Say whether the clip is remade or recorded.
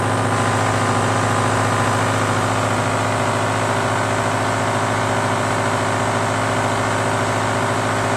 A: recorded